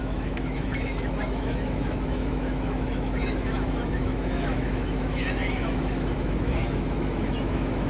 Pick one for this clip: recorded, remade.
remade